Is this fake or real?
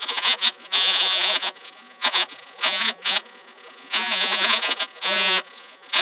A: fake